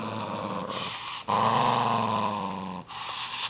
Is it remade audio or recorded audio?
recorded